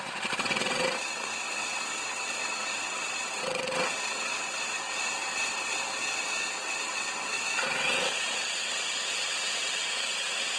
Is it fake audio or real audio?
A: fake